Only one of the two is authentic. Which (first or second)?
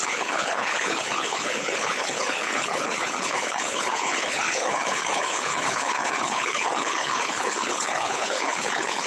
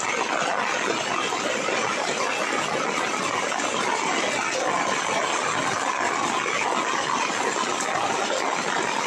second